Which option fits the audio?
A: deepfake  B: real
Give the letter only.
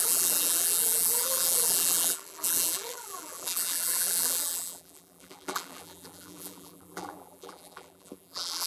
A